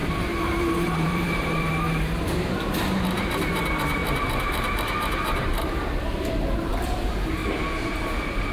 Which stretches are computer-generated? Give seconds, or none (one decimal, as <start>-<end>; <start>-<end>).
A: 0.0-7.4